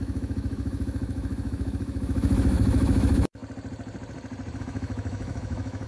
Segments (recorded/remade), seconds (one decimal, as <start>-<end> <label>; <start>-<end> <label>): 0.0-3.4 remade; 3.4-4.6 recorded; 4.6-5.9 remade